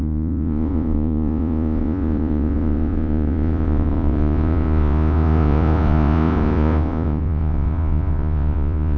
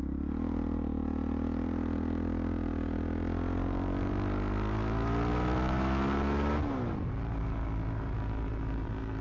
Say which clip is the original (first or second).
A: second